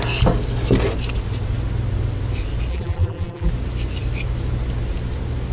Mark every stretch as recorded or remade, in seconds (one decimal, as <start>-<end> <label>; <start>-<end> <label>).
0.0-2.7 recorded; 2.7-3.5 remade; 3.5-5.5 recorded